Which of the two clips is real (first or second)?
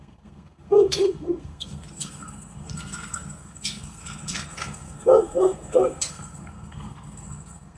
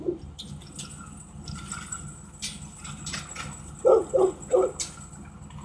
second